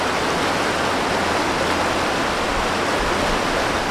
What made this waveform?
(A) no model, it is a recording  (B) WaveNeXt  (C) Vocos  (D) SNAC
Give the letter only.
A